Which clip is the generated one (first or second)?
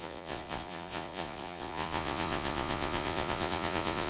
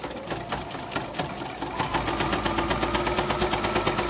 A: first